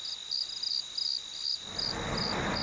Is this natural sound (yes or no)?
yes